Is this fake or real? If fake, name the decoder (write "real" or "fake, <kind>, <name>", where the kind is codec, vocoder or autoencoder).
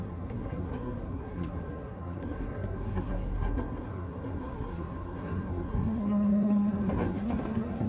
fake, codec, SNAC